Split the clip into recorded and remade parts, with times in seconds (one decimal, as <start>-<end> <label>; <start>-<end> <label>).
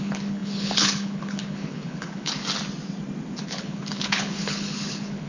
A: 0.0-2.4 remade; 2.4-3.4 recorded; 3.4-5.3 remade